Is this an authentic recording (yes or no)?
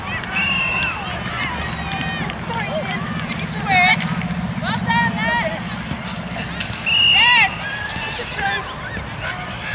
yes